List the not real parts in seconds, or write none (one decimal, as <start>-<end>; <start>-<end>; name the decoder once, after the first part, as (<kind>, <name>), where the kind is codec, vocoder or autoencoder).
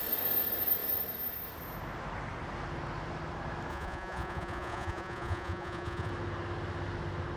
3.7-6.1 (vocoder, Vocos)